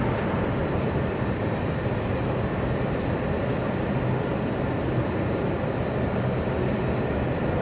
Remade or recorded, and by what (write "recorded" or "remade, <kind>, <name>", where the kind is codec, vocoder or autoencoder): recorded